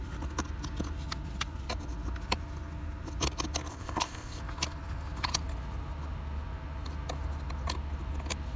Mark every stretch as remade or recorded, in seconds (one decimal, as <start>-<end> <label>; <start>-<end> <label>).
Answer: 0.0-3.7 recorded; 3.7-4.4 remade; 4.4-8.6 recorded